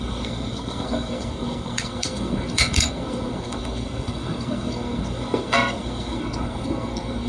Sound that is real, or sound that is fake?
fake